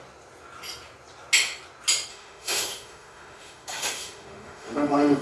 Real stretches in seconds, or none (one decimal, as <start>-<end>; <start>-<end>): 0.0-2.1